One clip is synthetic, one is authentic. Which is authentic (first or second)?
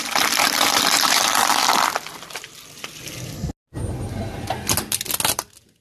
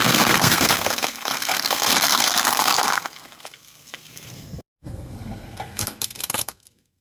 first